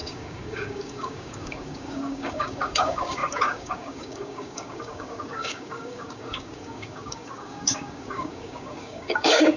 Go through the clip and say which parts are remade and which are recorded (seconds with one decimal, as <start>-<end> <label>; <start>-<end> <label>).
0.0-9.6 remade